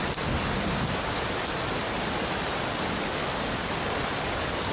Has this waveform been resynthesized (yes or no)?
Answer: no